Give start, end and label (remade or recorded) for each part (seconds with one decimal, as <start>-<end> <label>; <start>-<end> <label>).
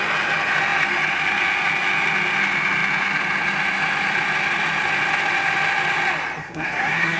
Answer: 0.0-6.4 recorded; 6.4-7.2 remade